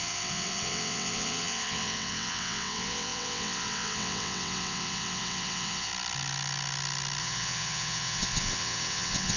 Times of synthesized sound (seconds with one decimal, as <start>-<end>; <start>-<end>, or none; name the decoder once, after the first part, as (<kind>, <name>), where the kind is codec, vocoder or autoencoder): 0.0-5.9 (vocoder, WaveNeXt); 7.2-9.4